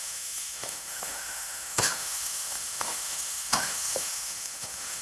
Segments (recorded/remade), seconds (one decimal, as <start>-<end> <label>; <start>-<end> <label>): 0.0-5.0 remade